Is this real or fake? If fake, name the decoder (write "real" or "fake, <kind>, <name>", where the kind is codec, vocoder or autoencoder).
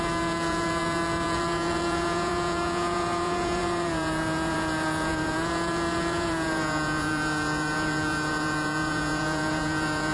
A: fake, vocoder, Vocos